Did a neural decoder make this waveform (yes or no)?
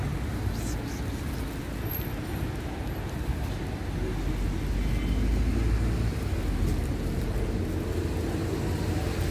no